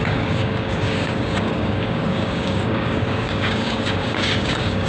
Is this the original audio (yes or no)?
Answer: no